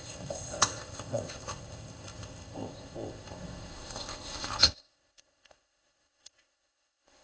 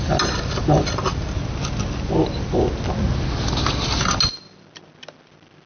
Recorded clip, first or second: second